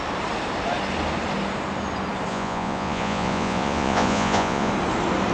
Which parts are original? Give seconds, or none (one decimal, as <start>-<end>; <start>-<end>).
0.0-2.3; 4.7-5.3